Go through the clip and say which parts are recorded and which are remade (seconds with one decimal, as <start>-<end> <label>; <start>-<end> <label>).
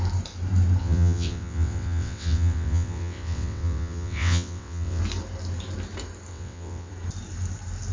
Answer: 0.0-0.8 recorded; 0.8-5.0 remade; 5.0-6.3 recorded; 6.3-6.9 remade; 6.9-7.9 recorded